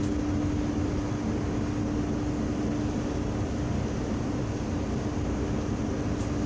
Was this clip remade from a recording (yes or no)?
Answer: no